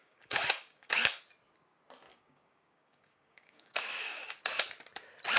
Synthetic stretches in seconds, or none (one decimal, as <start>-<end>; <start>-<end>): 0.0-1.2; 2.1-4.4